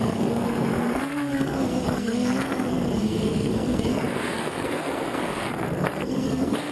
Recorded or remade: remade